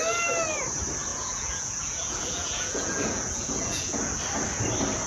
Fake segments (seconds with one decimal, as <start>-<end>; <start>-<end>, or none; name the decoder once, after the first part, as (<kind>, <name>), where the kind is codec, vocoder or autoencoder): 1.1-4.2 (vocoder, Vocos)